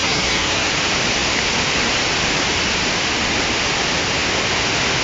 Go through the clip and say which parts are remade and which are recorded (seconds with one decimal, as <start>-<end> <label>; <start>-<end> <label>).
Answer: 0.0-0.7 remade; 0.7-5.0 recorded